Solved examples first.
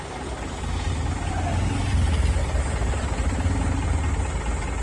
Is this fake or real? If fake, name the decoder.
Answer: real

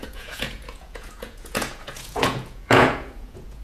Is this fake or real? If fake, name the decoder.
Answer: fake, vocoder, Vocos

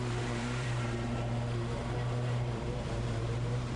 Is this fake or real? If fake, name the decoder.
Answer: fake, vocoder, BigVGAN v2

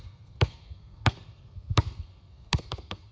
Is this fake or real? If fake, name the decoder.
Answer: fake, codec, SNAC